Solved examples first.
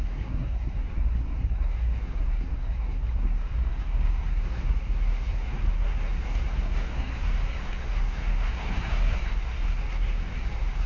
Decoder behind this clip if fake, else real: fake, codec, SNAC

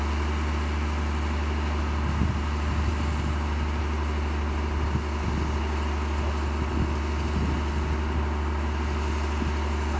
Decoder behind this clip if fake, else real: real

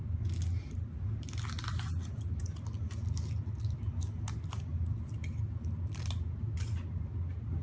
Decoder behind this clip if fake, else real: real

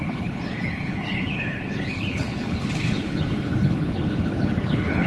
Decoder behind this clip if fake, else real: fake, codec, HILCodec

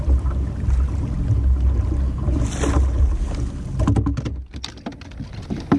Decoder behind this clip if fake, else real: real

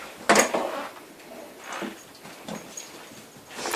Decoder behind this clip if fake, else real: real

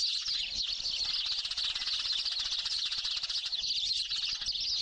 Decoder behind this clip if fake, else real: real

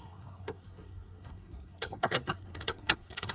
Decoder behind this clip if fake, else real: fake, codec, SNAC